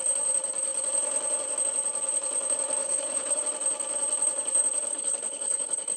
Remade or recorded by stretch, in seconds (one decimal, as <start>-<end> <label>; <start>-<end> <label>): 0.0-2.8 recorded; 2.8-3.4 remade; 3.4-4.9 recorded; 4.9-6.0 remade

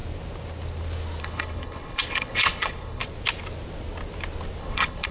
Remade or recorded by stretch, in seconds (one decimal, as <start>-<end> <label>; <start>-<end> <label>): 0.0-1.2 recorded; 1.2-3.0 remade; 3.0-4.6 recorded; 4.6-5.1 remade

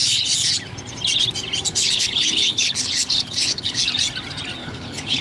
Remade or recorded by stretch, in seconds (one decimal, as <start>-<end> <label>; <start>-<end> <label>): 0.0-0.5 remade; 0.5-1.7 recorded; 1.7-3.9 remade; 3.9-4.6 recorded; 4.6-5.2 remade

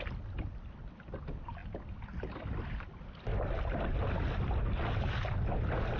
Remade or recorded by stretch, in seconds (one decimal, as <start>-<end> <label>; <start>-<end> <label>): 0.0-6.0 recorded

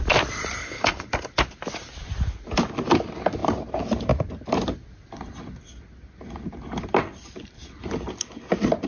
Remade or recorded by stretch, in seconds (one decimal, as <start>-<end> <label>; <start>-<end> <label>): 0.0-0.6 recorded; 0.6-1.1 remade; 1.1-8.9 recorded

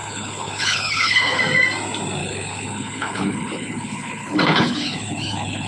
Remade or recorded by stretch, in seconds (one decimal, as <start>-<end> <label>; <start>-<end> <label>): 0.0-1.4 remade; 1.4-2.2 recorded; 2.2-5.7 remade